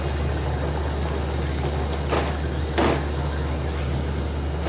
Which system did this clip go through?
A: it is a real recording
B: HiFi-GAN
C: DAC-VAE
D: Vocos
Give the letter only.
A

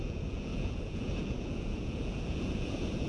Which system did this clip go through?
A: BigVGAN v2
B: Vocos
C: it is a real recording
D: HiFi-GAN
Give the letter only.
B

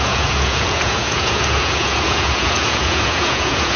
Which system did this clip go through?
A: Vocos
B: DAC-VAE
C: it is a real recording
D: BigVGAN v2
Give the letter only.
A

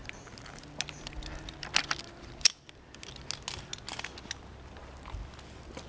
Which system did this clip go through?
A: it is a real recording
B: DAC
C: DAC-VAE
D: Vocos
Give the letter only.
A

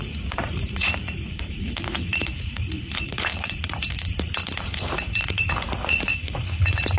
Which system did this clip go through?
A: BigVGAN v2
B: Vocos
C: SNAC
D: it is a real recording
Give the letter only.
B